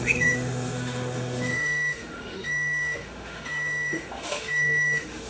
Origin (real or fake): fake